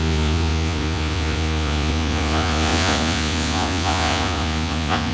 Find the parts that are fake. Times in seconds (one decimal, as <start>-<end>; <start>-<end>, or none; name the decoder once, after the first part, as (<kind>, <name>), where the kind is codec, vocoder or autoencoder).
0.0-5.1 (vocoder, Vocos)